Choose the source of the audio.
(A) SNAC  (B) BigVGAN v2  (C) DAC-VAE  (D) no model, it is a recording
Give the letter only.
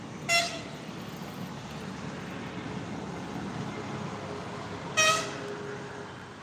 D